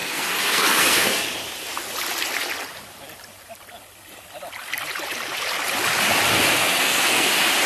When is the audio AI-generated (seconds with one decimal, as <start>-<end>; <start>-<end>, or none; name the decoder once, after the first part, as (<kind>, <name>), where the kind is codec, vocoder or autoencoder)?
0.0-1.3 (codec, SNAC); 6.6-7.3